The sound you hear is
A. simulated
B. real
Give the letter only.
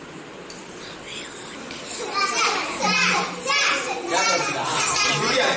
B